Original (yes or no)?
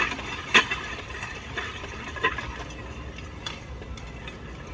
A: yes